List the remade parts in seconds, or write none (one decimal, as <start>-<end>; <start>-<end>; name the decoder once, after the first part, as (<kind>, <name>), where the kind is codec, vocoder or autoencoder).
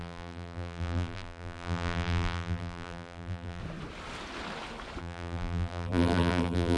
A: 0.0-3.6 (vocoder, BigVGAN v2); 5.0-6.8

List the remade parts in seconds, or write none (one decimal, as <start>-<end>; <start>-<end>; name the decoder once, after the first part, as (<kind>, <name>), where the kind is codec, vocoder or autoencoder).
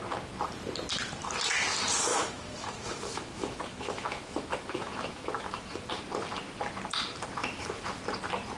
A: 2.1-5.9 (autoencoder, DAC-VAE); 7.4-8.0